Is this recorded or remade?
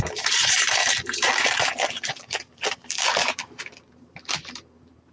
remade